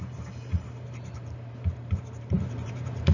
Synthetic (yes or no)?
yes